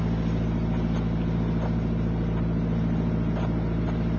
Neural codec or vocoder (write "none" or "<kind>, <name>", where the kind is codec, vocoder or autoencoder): none